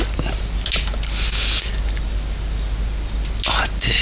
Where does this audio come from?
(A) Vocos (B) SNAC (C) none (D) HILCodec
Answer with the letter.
C